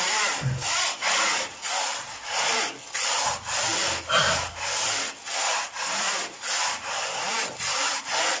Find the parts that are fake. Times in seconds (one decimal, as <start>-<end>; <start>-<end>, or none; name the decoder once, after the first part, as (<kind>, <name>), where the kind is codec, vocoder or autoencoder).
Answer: none